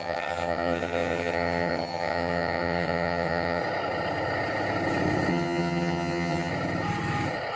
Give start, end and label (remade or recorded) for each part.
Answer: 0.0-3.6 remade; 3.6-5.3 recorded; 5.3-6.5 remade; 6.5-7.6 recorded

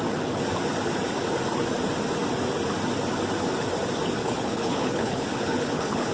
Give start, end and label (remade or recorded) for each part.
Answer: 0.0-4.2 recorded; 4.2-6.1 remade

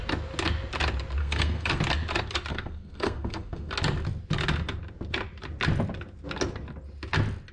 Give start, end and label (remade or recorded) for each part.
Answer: 0.0-1.2 recorded; 1.2-1.8 remade; 1.8-2.5 recorded; 2.5-3.7 remade; 3.7-7.5 recorded

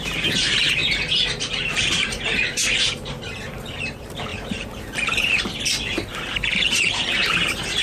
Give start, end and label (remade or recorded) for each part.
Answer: 0.0-0.8 remade; 0.8-1.6 recorded; 1.6-7.8 remade